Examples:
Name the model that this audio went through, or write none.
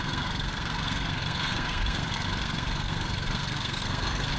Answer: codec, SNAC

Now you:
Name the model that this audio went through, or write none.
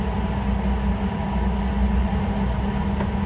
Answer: none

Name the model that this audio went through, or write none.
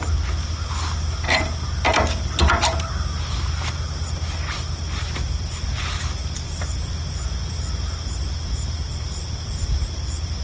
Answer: none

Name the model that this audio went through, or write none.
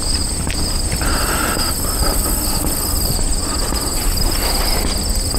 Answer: none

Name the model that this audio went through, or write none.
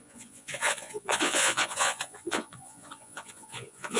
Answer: vocoder, Vocos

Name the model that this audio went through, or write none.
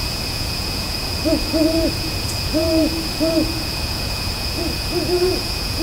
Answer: vocoder, Vocos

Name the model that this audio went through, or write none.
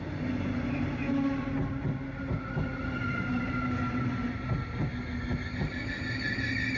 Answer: none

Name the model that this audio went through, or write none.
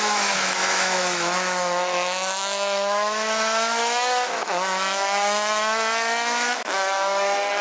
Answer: autoencoder, DAC-VAE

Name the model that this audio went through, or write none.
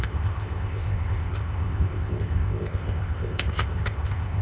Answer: codec, ZipCodec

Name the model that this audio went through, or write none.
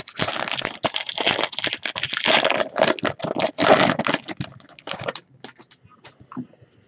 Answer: none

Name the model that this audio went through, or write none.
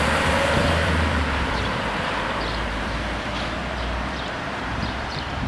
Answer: vocoder, BigVGAN v2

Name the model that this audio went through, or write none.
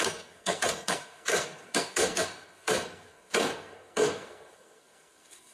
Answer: codec, SNAC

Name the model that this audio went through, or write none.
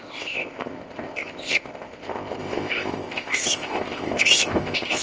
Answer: codec, ZipCodec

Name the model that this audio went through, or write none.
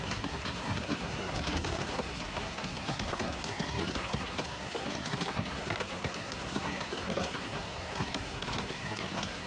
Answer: codec, SNAC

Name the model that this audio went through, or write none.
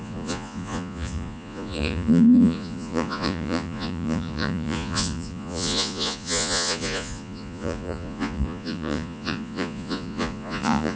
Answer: vocoder, Vocos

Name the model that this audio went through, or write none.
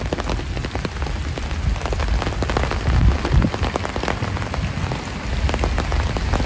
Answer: none